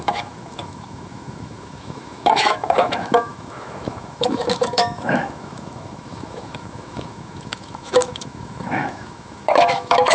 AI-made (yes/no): yes